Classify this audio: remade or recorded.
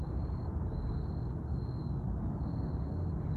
recorded